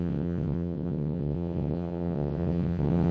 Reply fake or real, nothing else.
fake